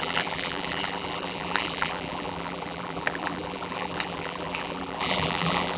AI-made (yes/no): yes